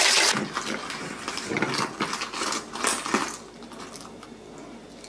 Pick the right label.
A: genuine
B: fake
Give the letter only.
A